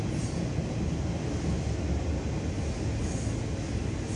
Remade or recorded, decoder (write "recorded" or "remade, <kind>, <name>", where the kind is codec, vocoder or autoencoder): recorded